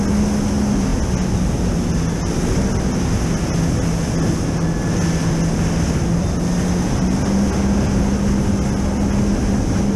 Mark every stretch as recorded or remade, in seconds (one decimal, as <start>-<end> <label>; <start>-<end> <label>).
0.0-10.0 recorded